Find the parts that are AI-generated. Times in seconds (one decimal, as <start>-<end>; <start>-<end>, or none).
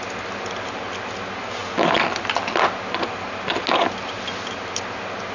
none